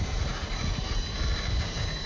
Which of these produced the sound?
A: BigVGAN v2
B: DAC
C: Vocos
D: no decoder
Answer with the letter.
A